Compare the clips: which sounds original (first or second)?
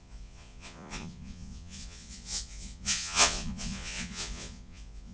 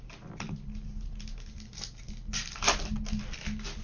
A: second